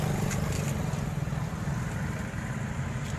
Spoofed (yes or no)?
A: no